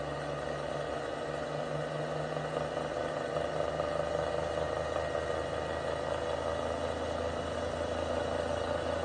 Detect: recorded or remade recorded